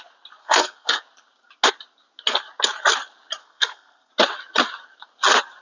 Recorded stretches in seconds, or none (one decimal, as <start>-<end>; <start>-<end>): 0.0-0.4; 1.0-3.4; 4.1-5.6